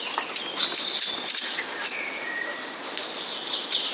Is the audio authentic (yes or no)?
yes